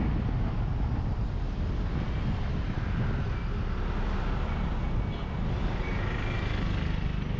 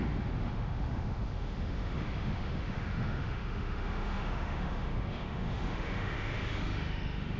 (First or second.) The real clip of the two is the first